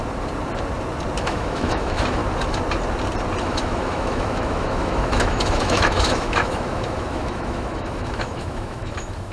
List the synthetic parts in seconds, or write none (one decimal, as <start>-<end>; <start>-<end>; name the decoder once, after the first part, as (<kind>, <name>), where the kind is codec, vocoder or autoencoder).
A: 1.2-2.2 (autoencoder, DAC-VAE); 3.4-9.3